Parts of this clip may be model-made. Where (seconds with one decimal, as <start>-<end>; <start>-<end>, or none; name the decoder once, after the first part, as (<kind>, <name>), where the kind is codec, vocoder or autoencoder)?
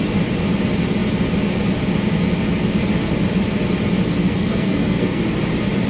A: 4.2-5.2 (codec, SNAC)